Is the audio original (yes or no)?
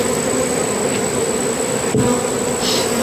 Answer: yes